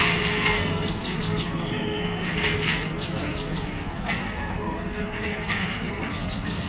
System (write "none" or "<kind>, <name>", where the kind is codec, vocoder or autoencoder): codec, SNAC